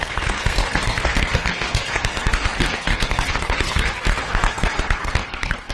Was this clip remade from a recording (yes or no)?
yes